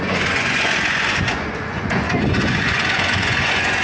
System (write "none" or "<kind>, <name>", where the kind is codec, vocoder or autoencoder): vocoder, Vocos